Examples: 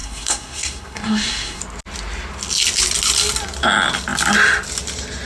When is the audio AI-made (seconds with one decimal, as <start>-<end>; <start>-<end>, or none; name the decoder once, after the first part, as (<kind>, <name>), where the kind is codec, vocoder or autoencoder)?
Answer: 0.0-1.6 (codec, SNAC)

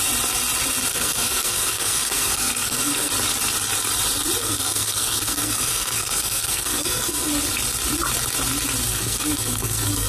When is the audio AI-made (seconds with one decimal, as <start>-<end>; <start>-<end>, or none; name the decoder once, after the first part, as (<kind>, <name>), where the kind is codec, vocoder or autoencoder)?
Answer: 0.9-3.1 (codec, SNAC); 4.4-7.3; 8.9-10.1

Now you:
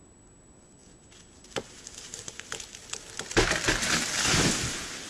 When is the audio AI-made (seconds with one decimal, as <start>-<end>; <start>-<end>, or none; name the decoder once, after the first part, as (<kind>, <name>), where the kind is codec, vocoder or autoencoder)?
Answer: none